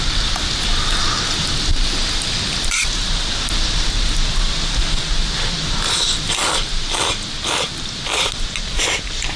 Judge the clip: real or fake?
real